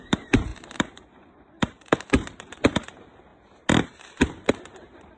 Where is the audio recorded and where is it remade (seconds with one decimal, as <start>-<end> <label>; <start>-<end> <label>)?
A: 0.0-5.2 remade